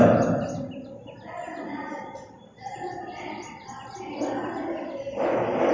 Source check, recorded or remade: recorded